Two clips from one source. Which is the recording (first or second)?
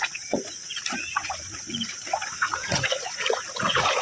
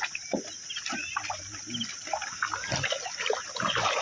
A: second